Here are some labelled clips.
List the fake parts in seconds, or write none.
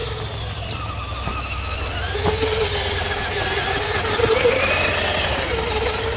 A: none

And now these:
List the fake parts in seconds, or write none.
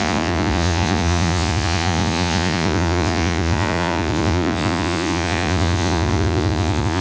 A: 0.0-7.0 (vocoder, Vocos)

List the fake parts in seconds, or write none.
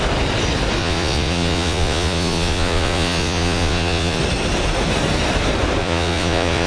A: 0.8-4.2 (vocoder, Vocos); 5.8-6.7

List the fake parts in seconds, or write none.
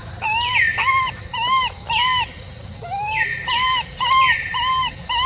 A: none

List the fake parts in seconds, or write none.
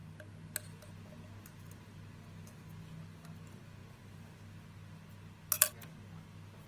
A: none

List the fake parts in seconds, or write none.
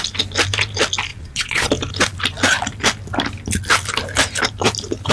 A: 1.1-1.7 (vocoder, Vocos)